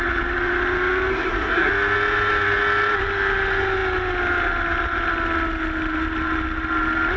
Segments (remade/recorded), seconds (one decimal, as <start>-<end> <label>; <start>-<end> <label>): 0.0-1.1 recorded; 1.1-1.7 remade; 1.7-7.2 recorded